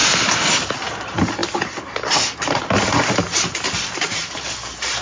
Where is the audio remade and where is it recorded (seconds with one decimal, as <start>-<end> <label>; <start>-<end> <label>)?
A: 0.0-5.0 recorded